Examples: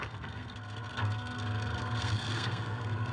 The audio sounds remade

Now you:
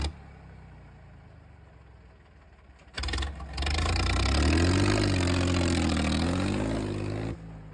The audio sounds recorded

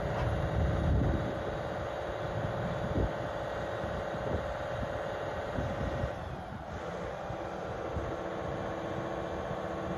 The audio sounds recorded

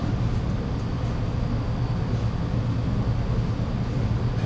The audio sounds recorded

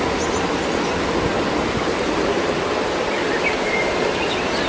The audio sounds recorded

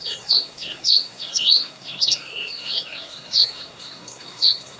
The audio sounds remade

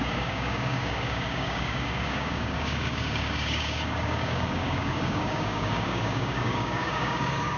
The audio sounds remade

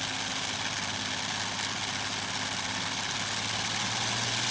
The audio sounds recorded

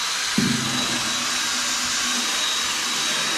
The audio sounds recorded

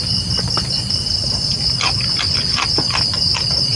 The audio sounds recorded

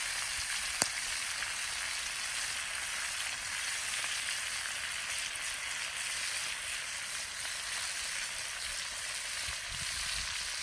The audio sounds recorded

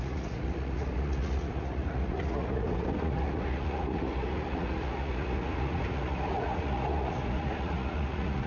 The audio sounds remade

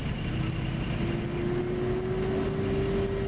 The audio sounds recorded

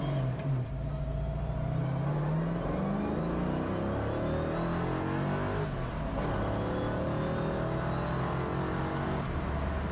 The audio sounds recorded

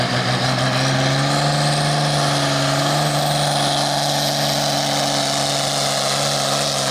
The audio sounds recorded